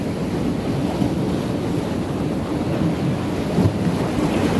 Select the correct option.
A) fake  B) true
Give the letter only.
B